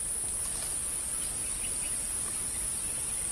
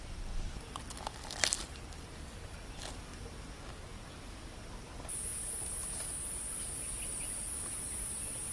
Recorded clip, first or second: second